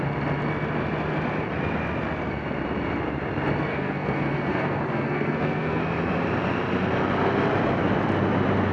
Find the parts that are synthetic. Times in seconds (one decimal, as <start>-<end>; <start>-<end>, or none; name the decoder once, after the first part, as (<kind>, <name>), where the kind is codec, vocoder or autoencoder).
3.7-5.8 (codec, SNAC)